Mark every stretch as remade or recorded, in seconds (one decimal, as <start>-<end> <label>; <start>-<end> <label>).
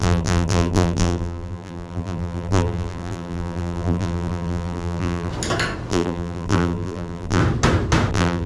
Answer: 0.0-5.3 remade; 5.3-5.9 recorded; 5.9-7.4 remade; 7.4-8.1 recorded; 8.1-8.5 remade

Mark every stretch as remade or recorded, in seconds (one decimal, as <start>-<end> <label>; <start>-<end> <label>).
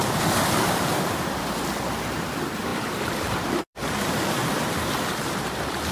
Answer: 0.0-4.4 remade; 4.4-5.9 recorded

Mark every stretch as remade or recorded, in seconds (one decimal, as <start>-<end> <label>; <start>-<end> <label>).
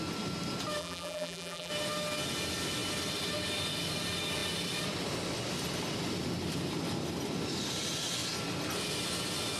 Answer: 0.0-0.8 recorded; 0.8-1.7 remade; 1.7-9.6 recorded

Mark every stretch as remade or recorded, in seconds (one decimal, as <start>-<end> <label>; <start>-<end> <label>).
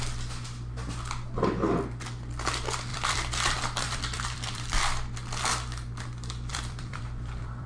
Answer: 0.0-2.9 recorded; 2.9-4.8 remade; 4.8-6.5 recorded; 6.5-7.7 remade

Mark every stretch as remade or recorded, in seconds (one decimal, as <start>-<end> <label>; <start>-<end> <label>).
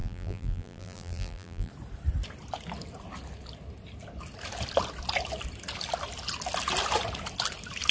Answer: 0.0-1.7 remade; 1.7-7.9 recorded